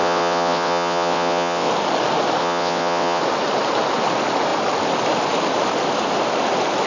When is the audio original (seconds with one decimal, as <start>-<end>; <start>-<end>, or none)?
1.7-2.4; 3.2-6.9